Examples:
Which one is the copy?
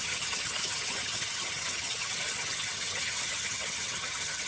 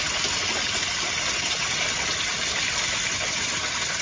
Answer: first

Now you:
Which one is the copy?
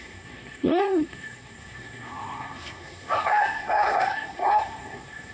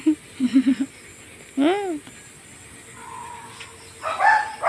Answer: first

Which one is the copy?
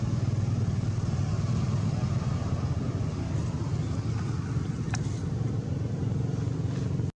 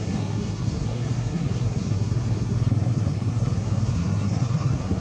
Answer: second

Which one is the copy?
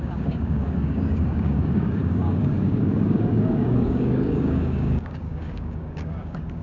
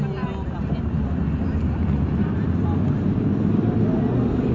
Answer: first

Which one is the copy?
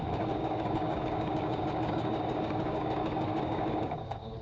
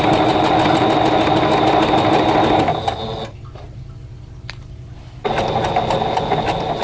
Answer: first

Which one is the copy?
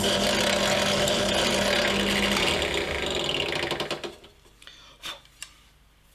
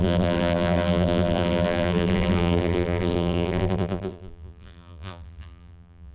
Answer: second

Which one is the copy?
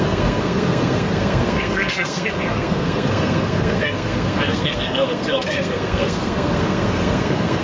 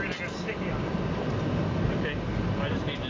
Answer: first